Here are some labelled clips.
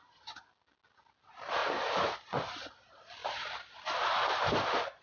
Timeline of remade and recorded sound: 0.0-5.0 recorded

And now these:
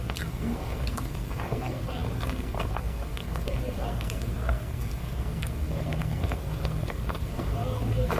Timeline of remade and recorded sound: 0.0-8.2 remade

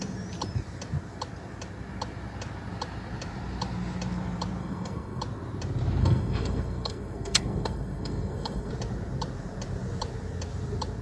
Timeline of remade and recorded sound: 0.0-4.6 recorded; 4.6-5.2 remade; 5.2-6.0 recorded; 6.0-8.7 remade; 8.7-11.0 recorded

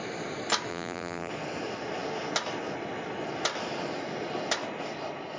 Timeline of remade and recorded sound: 0.0-0.7 recorded; 0.7-1.3 remade; 1.3-5.4 recorded